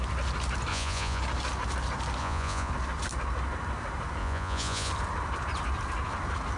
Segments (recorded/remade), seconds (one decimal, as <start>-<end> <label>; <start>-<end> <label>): 0.0-0.7 recorded; 0.7-1.2 remade; 1.2-2.2 recorded; 2.2-2.7 remade; 2.7-4.2 recorded; 4.2-4.9 remade; 4.9-6.6 recorded